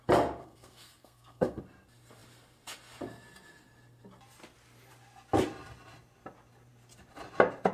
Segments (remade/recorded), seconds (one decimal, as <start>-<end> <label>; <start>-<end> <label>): 0.0-0.4 recorded; 0.4-1.6 remade; 1.6-7.7 recorded